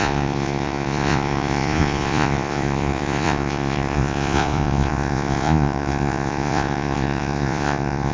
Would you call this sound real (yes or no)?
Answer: no